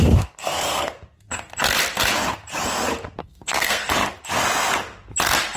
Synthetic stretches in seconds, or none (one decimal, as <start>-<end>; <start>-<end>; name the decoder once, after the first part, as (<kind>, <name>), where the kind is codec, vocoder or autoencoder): 0.0-1.0 (codec, SNAC); 3.2-3.9